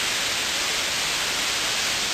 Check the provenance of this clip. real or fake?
real